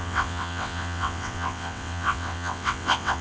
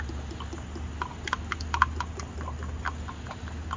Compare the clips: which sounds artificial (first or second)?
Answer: first